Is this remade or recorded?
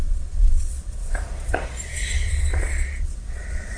remade